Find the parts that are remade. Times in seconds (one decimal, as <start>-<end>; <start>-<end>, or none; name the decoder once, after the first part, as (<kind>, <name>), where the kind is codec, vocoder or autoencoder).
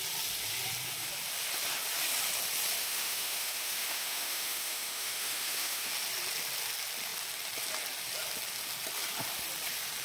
2.8-5.9 (autoencoder, DAC-VAE)